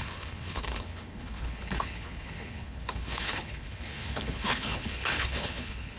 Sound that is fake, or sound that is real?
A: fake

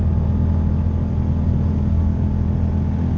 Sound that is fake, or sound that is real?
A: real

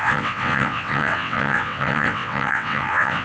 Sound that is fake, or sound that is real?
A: fake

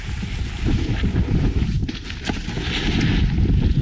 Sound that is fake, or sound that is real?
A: real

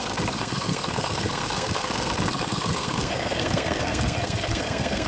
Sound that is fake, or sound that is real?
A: fake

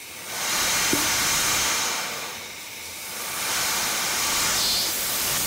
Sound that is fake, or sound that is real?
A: real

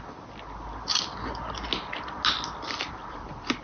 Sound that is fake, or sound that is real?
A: real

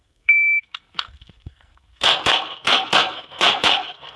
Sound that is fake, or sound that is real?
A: fake